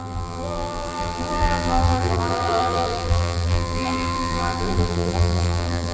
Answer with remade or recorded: remade